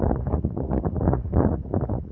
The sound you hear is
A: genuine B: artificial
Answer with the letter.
B